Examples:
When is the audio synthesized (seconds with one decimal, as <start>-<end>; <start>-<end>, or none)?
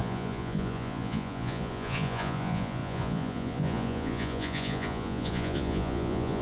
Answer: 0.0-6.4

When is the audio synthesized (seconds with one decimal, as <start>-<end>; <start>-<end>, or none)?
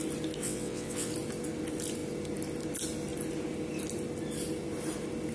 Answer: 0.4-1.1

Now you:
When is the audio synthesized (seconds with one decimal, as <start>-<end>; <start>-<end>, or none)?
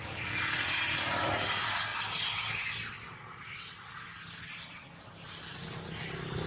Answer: none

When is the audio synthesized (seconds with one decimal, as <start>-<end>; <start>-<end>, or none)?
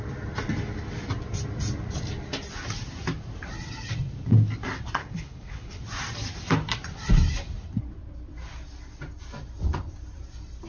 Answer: 5.0-5.8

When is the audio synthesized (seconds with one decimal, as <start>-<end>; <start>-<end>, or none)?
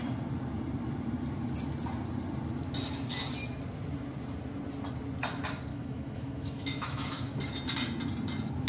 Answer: 5.7-7.4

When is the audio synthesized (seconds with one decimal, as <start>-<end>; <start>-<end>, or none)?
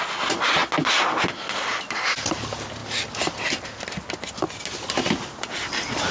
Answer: none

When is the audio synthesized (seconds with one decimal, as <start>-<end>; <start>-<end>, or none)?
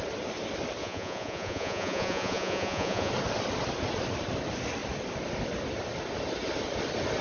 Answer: 0.8-3.1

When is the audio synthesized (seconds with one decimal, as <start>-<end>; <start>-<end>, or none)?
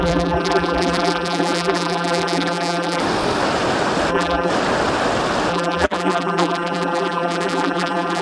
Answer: 0.0-3.0; 4.1-4.5; 5.5-8.2